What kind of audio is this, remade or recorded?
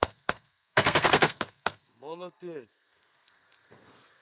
remade